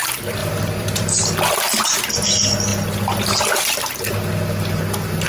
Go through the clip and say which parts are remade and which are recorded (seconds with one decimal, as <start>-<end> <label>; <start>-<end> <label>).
0.0-0.4 recorded; 0.4-1.1 remade; 1.1-5.3 recorded